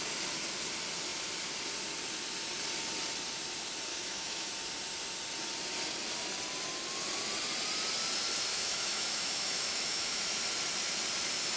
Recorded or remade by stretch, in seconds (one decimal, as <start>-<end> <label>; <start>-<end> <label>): 0.0-3.9 recorded; 3.9-4.5 remade; 4.5-8.5 recorded; 8.5-10.2 remade; 10.2-11.6 recorded